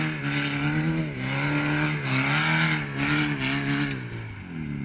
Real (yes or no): yes